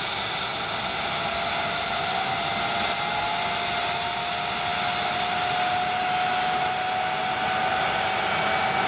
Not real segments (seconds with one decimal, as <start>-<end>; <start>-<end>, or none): none